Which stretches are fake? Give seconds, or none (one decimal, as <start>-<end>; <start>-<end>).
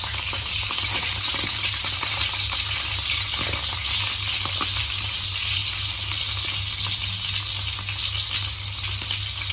0.0-3.8; 4.3-5.6